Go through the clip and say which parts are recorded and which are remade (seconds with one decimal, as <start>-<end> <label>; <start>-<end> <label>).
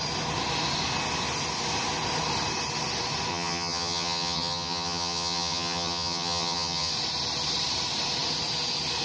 0.0-3.3 recorded; 3.3-6.9 remade; 6.9-9.0 recorded